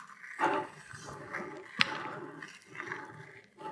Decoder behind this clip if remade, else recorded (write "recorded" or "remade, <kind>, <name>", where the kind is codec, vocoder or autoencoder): recorded